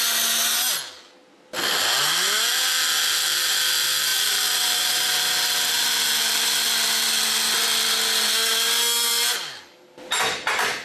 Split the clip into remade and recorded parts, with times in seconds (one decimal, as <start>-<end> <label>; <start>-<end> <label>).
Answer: 0.0-4.1 recorded; 4.1-5.0 remade; 5.0-10.8 recorded